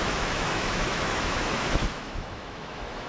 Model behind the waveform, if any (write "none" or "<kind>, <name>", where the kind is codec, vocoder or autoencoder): autoencoder, DAC-VAE